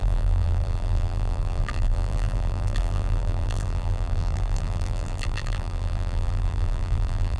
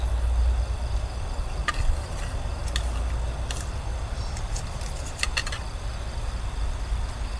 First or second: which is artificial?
first